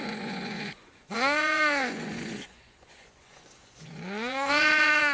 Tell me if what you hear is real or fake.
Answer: fake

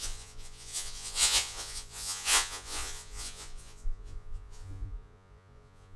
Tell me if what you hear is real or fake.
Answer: fake